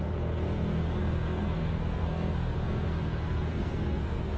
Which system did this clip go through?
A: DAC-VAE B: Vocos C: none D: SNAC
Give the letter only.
D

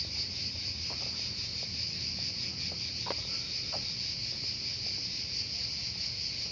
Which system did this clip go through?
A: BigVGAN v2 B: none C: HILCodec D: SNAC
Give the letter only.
B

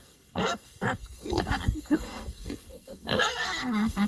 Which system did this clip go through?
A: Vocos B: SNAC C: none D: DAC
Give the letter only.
B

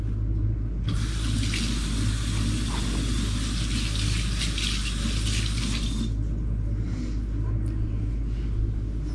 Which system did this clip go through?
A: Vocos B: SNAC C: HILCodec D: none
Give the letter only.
D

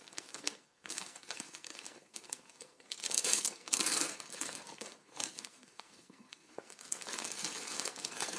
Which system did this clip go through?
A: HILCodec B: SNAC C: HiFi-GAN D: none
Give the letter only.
B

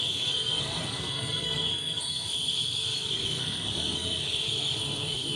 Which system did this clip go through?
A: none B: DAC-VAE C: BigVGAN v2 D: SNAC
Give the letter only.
D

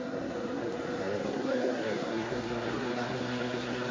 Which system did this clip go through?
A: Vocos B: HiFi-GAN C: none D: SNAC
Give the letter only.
D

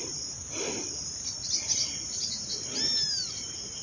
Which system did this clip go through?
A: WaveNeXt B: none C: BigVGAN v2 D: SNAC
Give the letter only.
B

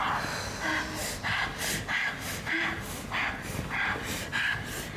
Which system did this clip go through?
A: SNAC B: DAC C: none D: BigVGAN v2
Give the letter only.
C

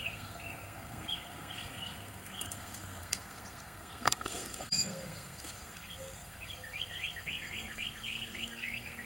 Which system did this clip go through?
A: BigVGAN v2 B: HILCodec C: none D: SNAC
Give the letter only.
D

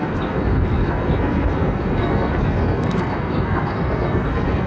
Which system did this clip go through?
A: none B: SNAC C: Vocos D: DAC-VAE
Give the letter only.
B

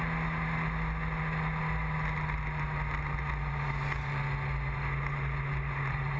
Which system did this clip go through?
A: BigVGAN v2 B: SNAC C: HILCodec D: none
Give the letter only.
D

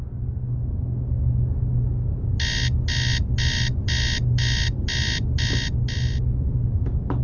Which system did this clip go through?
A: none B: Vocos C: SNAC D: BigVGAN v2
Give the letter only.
A